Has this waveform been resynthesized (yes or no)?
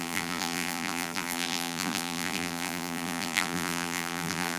yes